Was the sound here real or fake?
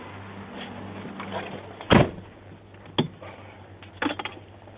real